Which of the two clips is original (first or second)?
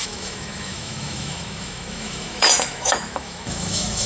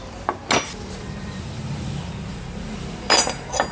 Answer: second